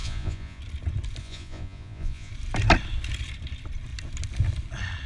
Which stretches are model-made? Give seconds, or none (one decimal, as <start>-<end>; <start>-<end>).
0.0-0.6; 1.2-2.3